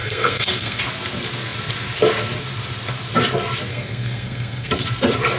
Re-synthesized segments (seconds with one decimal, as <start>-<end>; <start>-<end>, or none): 0.0-0.8; 3.7-4.7